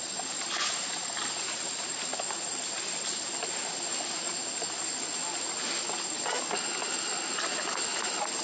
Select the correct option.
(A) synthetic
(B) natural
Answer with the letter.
B